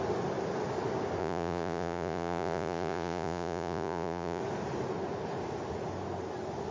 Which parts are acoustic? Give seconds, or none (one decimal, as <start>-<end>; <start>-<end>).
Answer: 0.0-1.2; 4.4-6.7